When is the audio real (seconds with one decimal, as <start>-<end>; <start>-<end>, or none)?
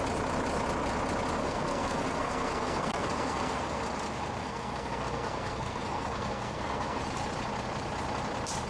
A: 0.0-1.4; 3.8-4.4; 7.0-8.7